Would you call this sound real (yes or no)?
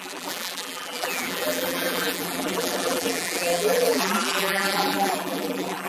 no